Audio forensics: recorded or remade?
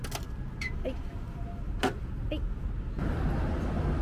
recorded